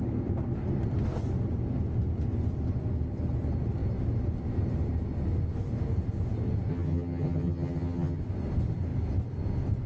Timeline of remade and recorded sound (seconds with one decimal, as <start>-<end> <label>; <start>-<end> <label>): 0.0-6.7 recorded; 6.7-8.2 remade; 8.2-9.9 recorded